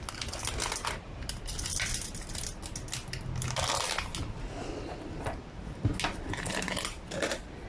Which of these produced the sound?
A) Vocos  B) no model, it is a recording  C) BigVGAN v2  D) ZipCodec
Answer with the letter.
B